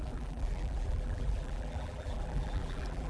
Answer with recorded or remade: remade